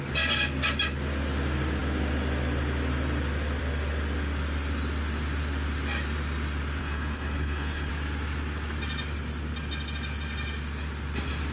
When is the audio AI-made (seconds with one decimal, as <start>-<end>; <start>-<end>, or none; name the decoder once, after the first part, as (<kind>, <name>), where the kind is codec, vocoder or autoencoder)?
6.8-7.9 (codec, HILCodec)